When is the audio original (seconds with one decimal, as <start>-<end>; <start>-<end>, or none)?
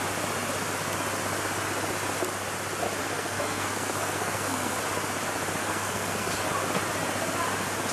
0.0-3.0; 4.8-5.6; 6.5-7.9